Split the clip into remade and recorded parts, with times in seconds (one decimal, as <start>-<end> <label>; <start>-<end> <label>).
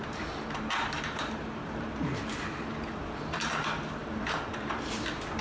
0.0-5.4 remade